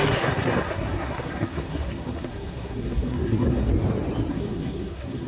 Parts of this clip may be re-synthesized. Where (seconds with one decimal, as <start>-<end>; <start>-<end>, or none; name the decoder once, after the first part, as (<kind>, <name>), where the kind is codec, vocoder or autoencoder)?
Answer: 0.0-3.7 (codec, SNAC); 4.3-5.3